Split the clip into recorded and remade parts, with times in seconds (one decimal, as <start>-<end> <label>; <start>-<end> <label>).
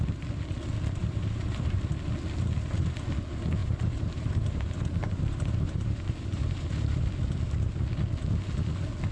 0.0-1.0 recorded; 1.0-1.9 remade; 1.9-3.6 recorded; 3.6-7.1 remade; 7.1-9.1 recorded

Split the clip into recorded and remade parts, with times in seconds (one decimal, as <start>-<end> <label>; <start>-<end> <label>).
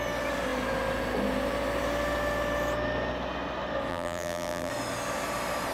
0.0-3.9 recorded; 3.9-4.7 remade; 4.7-5.7 recorded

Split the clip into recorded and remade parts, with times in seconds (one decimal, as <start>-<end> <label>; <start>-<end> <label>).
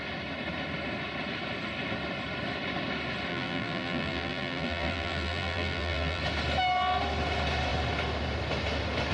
0.0-3.3 recorded; 3.3-6.2 remade; 6.2-9.1 recorded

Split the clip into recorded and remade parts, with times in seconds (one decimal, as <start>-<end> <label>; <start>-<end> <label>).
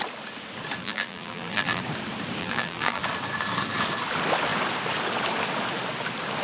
0.0-0.8 recorded; 0.8-1.8 remade; 1.8-2.4 recorded; 2.4-3.0 remade; 3.0-6.4 recorded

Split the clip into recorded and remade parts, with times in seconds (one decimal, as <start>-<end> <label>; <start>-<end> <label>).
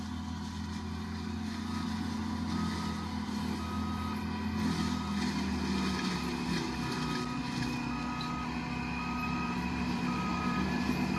0.0-9.2 recorded; 9.2-11.2 remade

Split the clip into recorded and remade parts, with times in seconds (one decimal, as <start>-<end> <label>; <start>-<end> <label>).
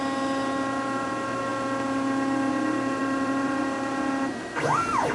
0.0-3.0 recorded; 3.0-3.6 remade; 3.6-5.1 recorded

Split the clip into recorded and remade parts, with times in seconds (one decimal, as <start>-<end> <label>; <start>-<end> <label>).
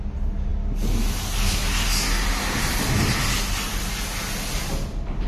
0.0-5.3 recorded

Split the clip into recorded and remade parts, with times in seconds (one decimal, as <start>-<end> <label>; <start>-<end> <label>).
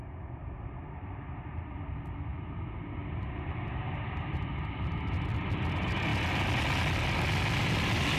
0.0-0.4 recorded; 0.4-1.8 remade; 1.8-3.0 recorded; 3.0-5.0 remade; 5.0-8.2 recorded